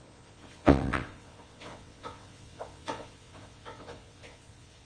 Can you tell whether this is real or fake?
fake